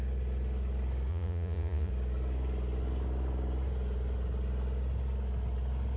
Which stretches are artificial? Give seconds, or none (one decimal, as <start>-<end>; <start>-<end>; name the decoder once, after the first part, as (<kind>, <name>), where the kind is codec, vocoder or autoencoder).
1.1-1.9 (vocoder, Vocos)